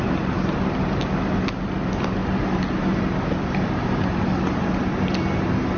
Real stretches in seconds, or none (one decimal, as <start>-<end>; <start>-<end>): 0.0-5.8